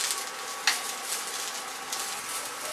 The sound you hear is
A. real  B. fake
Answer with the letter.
A